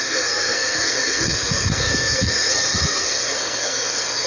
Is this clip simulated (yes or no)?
yes